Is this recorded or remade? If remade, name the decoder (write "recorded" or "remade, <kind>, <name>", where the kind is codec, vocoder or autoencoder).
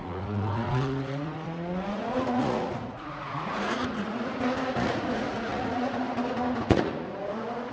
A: remade, vocoder, Vocos